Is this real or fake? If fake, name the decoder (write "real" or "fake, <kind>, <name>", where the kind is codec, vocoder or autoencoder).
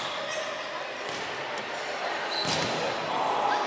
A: real